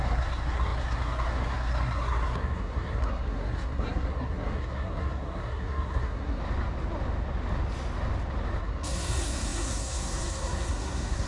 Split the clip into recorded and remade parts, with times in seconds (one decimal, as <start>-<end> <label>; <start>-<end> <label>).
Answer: 0.0-6.4 remade; 6.4-8.6 recorded; 8.6-11.3 remade

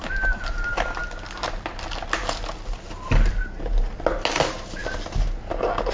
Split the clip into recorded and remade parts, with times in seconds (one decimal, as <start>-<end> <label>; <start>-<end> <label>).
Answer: 0.0-5.9 recorded

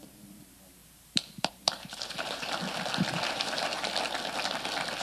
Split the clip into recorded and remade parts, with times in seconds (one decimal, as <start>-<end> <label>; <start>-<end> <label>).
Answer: 0.0-2.6 remade; 2.6-5.0 recorded